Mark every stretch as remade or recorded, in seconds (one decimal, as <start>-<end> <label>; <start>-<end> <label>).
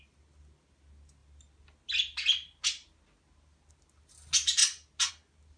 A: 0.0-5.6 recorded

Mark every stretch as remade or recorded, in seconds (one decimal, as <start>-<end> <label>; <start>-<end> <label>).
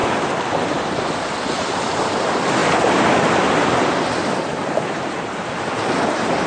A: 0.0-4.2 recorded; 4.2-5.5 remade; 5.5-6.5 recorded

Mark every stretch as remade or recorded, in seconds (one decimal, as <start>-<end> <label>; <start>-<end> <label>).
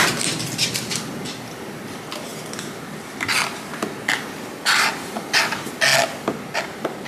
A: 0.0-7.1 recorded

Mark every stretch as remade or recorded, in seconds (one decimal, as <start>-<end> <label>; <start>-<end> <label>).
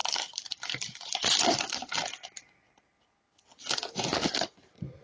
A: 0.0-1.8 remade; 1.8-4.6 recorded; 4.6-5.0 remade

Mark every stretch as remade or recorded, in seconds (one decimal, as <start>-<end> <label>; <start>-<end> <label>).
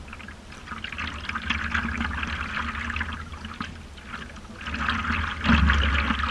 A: 0.0-6.3 recorded